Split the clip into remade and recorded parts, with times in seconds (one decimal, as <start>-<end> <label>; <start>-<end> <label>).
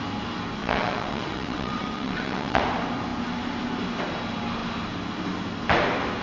0.0-0.6 recorded; 0.6-2.6 remade; 2.6-6.2 recorded